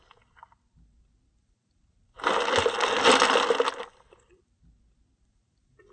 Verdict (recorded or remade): recorded